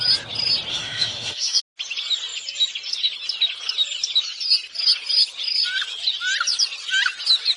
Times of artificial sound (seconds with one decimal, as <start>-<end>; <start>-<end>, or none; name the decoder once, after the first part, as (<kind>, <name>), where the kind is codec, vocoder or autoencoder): 0.7-1.6 (autoencoder, DAC-VAE)